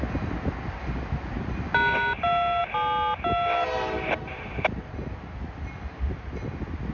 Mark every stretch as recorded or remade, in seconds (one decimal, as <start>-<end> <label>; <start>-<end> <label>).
0.0-6.9 recorded